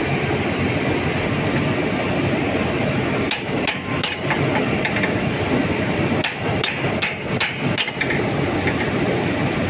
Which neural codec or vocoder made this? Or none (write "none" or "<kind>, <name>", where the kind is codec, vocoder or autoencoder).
none